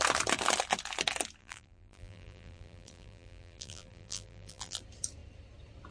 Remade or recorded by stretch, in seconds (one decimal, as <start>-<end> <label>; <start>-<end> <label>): 0.0-1.4 recorded; 1.4-4.8 remade; 4.8-5.9 recorded